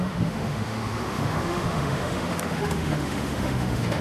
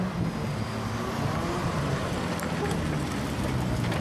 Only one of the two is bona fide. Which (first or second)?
second